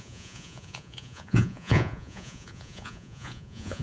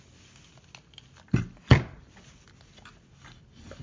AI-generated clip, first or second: first